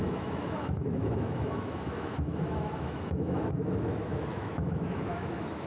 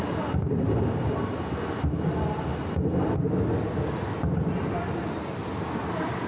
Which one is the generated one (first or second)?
first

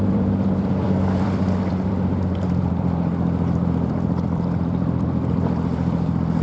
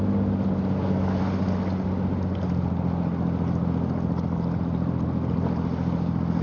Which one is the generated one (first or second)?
first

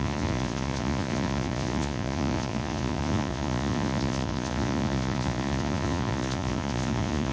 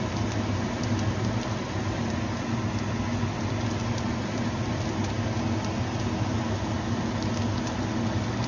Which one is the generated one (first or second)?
first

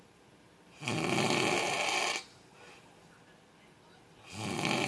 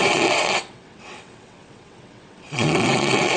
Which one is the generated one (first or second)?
second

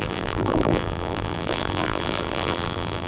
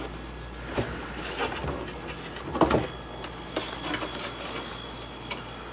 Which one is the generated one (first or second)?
first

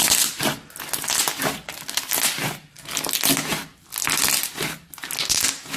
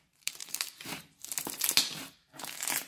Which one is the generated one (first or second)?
second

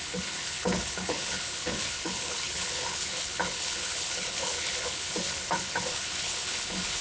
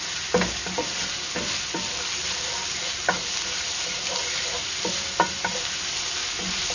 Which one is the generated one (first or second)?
first